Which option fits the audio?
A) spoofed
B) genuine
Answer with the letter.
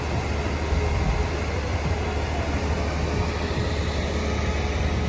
B